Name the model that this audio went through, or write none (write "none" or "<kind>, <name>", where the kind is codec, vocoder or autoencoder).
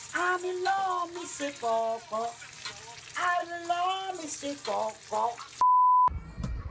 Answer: none